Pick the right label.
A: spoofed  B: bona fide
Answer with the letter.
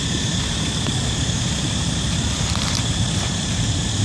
A